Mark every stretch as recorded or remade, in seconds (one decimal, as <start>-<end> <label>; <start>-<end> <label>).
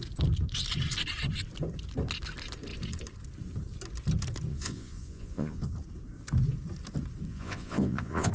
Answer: 0.0-4.5 recorded; 4.5-5.7 remade; 5.7-7.3 recorded; 7.3-8.3 remade